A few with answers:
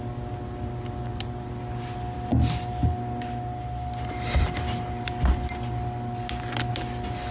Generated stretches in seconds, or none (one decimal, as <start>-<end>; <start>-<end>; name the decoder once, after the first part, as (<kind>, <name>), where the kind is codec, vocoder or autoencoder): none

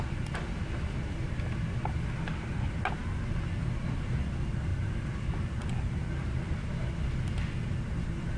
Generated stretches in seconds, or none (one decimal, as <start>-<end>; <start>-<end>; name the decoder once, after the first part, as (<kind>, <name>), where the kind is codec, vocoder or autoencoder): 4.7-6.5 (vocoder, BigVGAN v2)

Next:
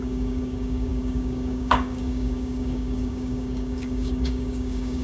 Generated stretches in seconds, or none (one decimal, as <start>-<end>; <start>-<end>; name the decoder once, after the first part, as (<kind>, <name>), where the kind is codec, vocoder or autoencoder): 0.0-5.0 (codec, DAC)